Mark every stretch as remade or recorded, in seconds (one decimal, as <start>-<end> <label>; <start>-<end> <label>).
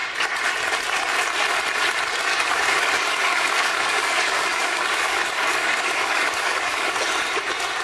0.0-2.3 recorded; 2.3-7.0 remade; 7.0-7.8 recorded